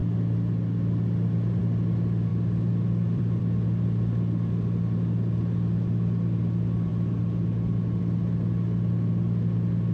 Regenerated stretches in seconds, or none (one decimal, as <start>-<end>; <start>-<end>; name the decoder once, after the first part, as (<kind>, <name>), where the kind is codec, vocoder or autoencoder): 2.3-3.4 (vocoder, BigVGAN v2)